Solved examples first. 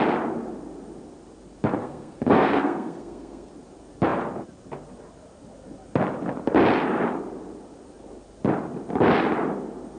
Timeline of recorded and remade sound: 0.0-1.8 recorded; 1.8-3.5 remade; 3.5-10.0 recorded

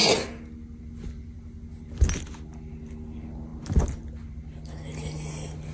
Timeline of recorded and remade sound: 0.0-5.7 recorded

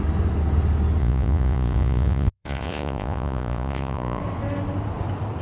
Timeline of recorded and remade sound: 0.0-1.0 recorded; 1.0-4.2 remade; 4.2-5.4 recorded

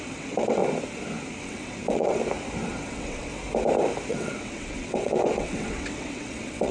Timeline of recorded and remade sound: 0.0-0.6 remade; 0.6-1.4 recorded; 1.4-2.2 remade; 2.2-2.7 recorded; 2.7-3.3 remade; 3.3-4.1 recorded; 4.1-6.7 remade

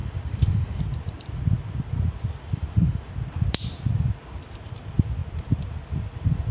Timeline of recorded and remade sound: 0.0-0.8 remade; 0.8-2.4 recorded; 2.4-3.1 remade; 3.1-6.5 recorded